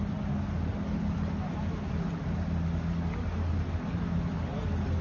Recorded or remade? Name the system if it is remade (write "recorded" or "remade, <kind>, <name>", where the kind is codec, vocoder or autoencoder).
recorded